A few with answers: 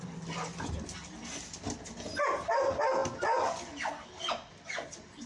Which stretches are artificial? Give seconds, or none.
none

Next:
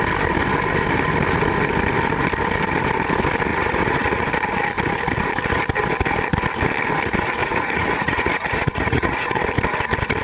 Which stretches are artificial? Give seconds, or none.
3.5-4.3 (vocoder, Vocos); 7.4-9.4

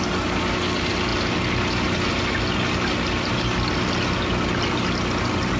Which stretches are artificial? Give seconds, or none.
none

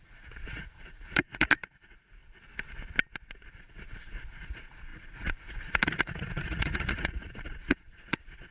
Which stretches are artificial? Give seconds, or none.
0.0-2.2 (vocoder, Vocos); 3.5-8.5

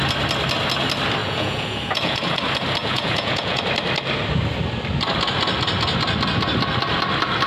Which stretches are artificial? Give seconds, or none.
1.2-2.4 (vocoder, Vocos); 2.8-3.6